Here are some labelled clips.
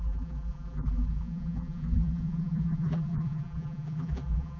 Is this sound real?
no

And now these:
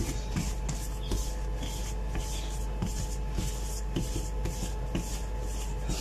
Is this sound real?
yes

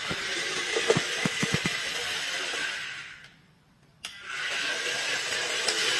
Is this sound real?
no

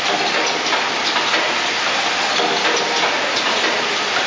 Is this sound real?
yes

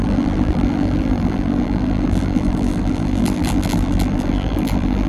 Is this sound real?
no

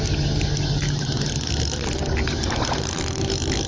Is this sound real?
yes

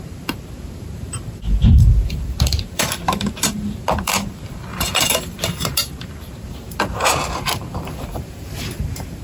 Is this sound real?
no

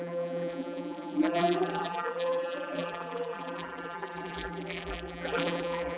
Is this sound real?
no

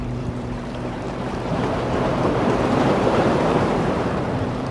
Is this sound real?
no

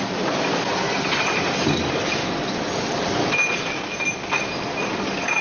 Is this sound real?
yes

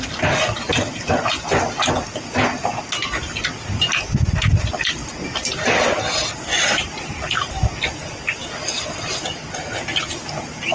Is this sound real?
yes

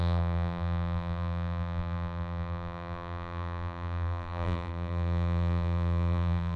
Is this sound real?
no